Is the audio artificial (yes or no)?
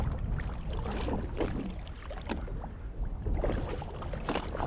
no